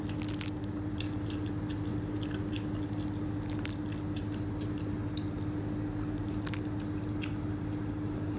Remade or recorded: recorded